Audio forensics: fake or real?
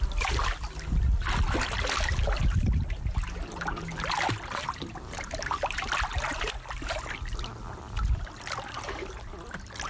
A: real